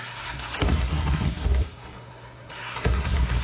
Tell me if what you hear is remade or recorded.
remade